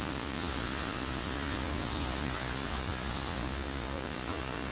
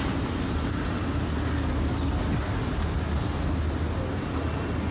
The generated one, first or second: first